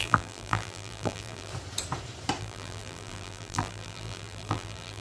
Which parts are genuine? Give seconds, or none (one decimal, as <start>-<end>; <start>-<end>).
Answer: 1.5-2.4